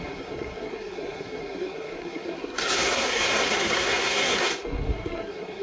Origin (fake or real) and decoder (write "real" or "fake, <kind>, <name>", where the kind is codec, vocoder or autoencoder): fake, codec, SNAC